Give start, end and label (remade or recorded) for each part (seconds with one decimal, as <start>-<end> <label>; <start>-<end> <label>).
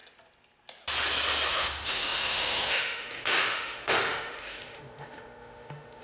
0.0-1.5 recorded; 1.5-6.0 remade